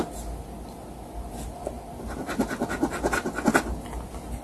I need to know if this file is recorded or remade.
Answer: recorded